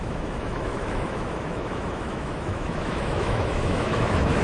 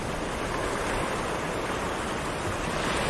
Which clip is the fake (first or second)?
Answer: first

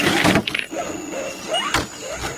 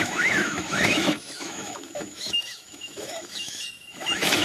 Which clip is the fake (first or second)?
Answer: second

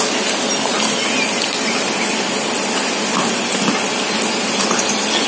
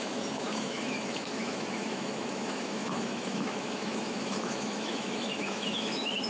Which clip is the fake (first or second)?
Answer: second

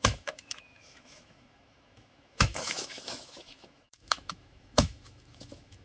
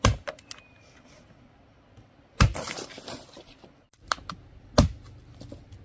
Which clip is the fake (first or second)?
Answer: first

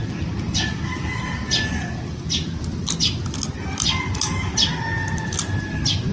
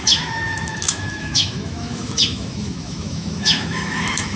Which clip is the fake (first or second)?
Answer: second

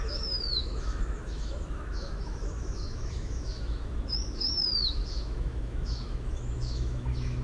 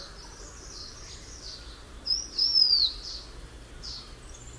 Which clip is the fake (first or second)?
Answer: first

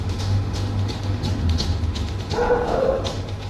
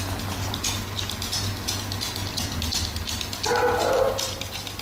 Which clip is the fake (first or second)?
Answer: first